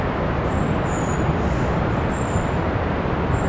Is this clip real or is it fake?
real